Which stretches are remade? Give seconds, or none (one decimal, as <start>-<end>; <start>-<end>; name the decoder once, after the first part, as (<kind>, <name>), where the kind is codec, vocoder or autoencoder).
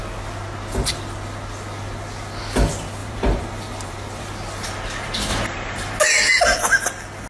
3.0-4.3 (vocoder, BigVGAN v2); 5.3-6.0